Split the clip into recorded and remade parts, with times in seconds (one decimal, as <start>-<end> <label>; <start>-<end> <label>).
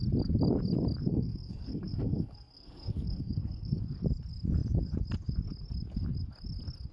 0.0-1.1 recorded; 1.1-3.8 remade; 3.8-6.9 recorded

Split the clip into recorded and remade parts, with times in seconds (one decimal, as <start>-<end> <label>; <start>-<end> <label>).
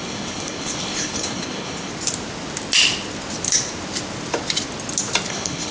0.0-1.9 remade; 1.9-5.3 recorded; 5.3-5.7 remade